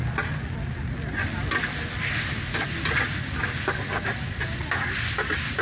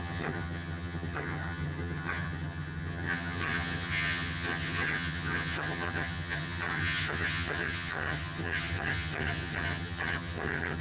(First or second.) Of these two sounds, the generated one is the second